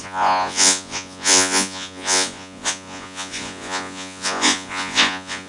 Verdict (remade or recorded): remade